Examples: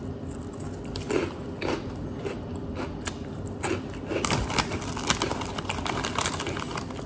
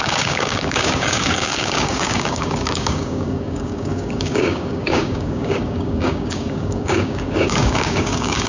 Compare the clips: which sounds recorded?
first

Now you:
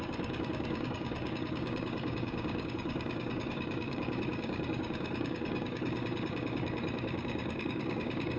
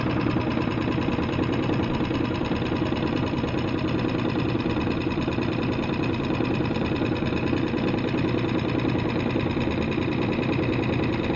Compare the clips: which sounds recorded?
second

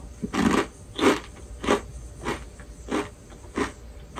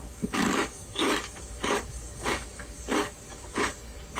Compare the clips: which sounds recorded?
first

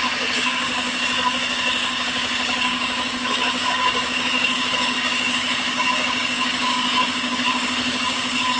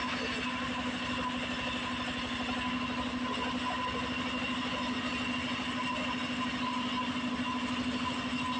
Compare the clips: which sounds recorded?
second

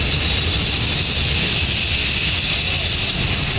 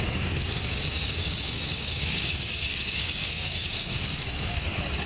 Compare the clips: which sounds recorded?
first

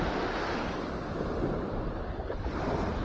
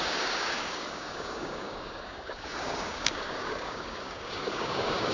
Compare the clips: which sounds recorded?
first